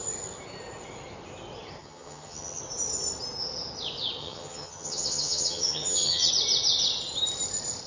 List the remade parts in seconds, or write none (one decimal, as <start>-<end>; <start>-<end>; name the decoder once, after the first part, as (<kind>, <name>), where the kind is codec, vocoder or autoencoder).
1.8-2.6 (vocoder, HiFi-GAN); 4.2-6.3